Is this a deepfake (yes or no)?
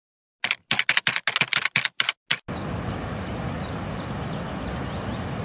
no